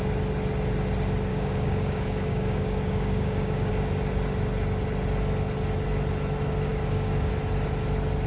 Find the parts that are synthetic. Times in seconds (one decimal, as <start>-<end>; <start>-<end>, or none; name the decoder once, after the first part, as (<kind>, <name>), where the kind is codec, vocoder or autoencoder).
1.3-3.7 (codec, DAC); 6.7-7.3